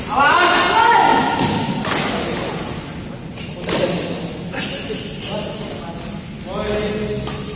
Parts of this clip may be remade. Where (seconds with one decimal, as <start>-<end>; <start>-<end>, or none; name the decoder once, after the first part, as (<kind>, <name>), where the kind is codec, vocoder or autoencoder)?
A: none